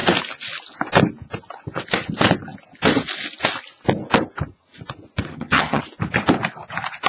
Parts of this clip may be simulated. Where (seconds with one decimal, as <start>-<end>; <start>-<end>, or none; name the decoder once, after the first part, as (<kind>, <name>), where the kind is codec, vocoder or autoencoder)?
5.3-5.8 (vocoder, HiFi-GAN)